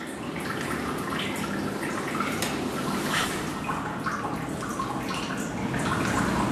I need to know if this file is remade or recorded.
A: recorded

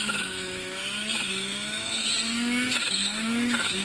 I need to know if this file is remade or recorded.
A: remade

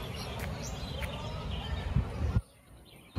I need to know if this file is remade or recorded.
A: recorded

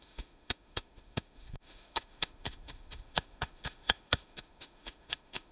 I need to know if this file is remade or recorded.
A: remade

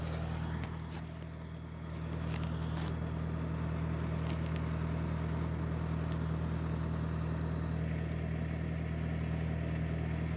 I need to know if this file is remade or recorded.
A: recorded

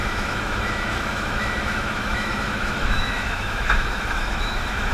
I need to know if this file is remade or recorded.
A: remade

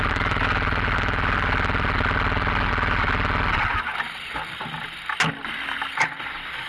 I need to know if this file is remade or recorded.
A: recorded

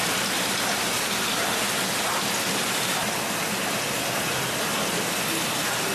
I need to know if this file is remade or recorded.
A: recorded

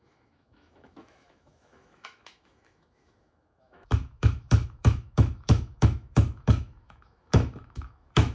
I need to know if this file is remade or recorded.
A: remade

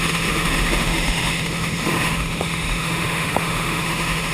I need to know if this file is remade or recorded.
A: remade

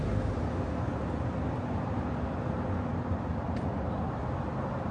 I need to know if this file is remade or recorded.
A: recorded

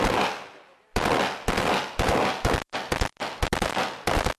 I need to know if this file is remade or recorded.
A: recorded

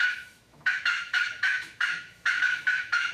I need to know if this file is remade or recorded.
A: remade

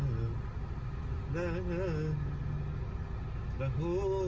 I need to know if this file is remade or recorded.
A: recorded